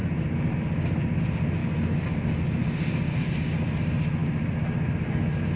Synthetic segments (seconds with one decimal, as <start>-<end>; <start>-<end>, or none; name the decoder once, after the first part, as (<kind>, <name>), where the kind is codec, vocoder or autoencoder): none

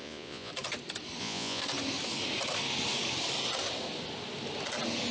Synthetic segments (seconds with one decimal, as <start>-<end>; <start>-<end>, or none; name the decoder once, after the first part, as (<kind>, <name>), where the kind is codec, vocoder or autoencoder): 0.0-0.5 (vocoder, Vocos); 1.2-1.6

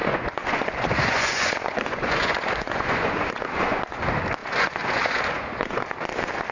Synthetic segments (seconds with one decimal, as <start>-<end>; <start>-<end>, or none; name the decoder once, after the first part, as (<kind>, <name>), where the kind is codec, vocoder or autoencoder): 0.0-3.8 (vocoder, Vocos); 4.4-5.8

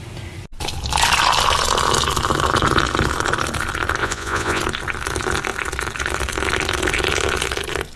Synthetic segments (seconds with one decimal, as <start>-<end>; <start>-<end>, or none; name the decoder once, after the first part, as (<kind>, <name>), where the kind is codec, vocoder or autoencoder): 4.0-4.6 (vocoder, Vocos)